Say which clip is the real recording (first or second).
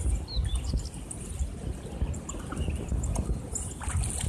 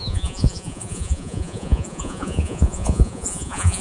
first